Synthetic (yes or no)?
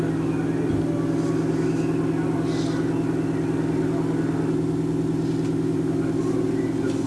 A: no